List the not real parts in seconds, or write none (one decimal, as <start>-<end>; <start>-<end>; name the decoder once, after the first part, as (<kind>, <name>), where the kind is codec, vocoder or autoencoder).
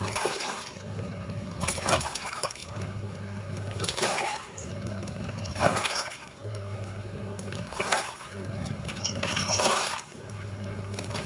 0.0-11.3 (codec, SNAC)